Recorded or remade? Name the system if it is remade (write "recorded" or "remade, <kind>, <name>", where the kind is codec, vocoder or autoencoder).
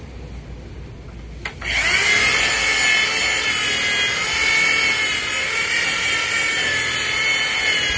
recorded